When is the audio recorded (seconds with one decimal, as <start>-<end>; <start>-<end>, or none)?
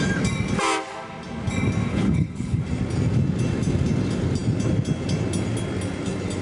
0.0-1.9; 2.6-6.4